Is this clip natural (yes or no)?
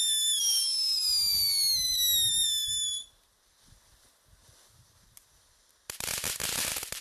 yes